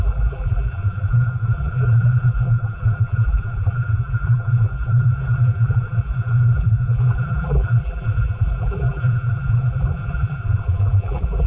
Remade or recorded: remade